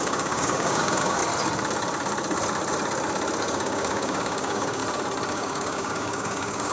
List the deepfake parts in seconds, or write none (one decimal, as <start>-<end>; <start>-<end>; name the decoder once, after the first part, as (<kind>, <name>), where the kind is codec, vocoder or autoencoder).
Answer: 0.0-1.2 (codec, DAC); 3.4-4.8; 5.3-6.7